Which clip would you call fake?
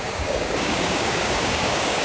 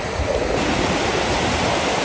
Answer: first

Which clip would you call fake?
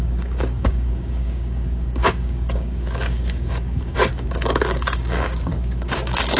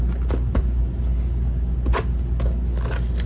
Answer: first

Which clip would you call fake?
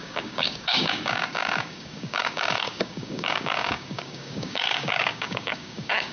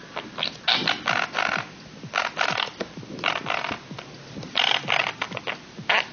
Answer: first